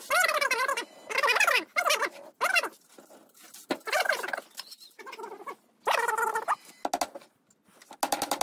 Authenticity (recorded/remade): recorded